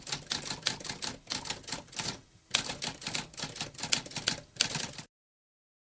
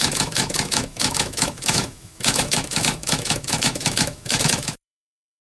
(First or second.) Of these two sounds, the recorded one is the first